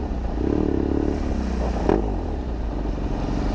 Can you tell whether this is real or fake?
real